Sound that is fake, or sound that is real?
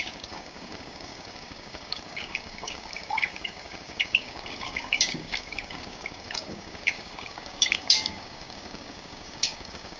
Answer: fake